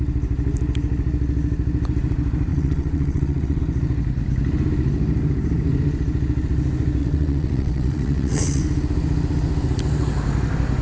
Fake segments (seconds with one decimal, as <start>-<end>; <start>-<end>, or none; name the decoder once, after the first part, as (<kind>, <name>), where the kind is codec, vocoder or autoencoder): 2.5-3.6 (vocoder, WaveNeXt); 7.0-8.6